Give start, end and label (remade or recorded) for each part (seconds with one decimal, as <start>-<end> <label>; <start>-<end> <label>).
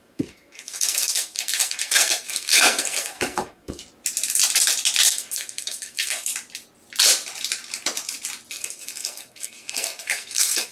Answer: 0.0-3.8 remade; 3.8-5.1 recorded; 5.1-6.3 remade; 6.3-8.5 recorded; 8.5-10.7 remade